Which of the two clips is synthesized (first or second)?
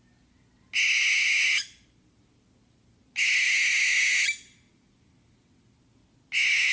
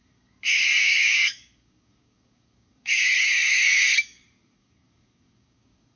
second